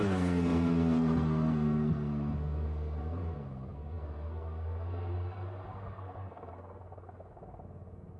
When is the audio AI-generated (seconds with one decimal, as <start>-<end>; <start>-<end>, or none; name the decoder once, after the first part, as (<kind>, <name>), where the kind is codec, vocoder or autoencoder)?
0.0-8.2 (codec, SNAC)